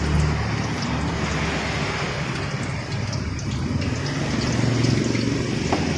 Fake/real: real